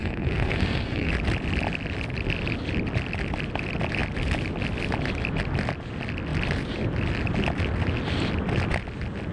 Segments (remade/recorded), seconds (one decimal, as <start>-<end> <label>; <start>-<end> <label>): 0.0-1.1 remade; 1.1-9.3 recorded